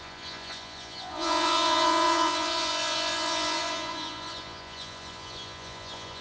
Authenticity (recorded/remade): remade